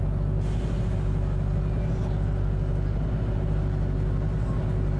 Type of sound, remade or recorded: recorded